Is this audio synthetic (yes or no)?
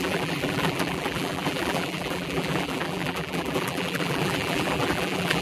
yes